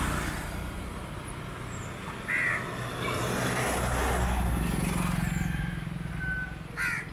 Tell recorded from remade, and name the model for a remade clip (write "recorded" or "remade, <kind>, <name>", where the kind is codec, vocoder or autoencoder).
recorded